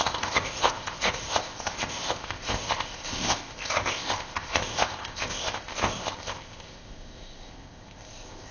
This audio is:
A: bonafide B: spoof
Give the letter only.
B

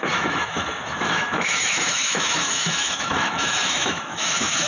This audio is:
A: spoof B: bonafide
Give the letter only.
A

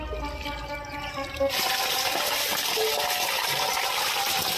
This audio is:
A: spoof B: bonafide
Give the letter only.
B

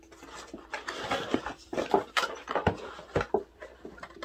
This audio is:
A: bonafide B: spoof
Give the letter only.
A